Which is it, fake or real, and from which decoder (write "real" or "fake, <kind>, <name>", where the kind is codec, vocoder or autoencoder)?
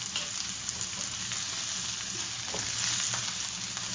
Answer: real